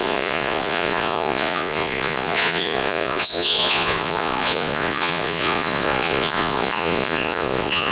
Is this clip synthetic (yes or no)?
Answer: yes